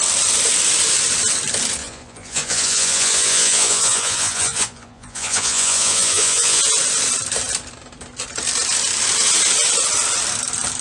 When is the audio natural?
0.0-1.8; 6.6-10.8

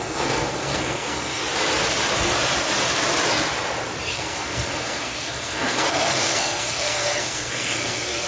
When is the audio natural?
1.4-4.1

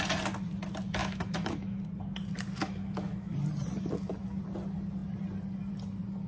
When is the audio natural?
0.0-1.0; 1.8-2.6; 3.3-6.3

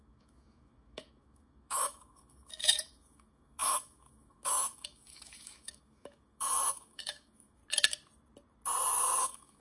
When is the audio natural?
7.6-9.2

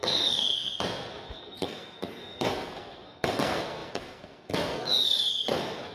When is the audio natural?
none

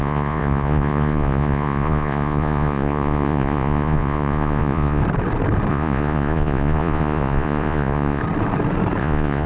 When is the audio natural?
5.0-5.7; 8.2-9.0